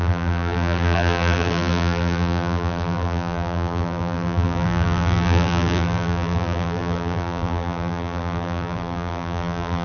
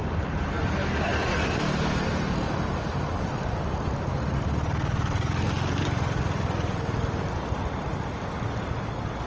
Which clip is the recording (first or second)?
second